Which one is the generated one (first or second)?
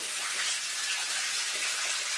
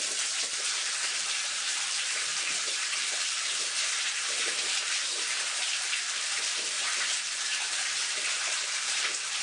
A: second